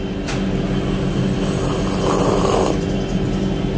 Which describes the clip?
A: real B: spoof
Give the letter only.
A